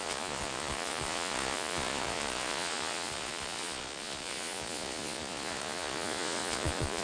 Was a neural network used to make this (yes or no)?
yes